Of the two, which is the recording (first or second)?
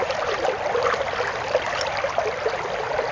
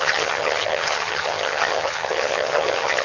first